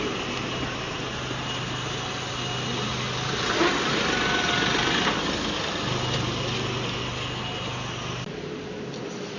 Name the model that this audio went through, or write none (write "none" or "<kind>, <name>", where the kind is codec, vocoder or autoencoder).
none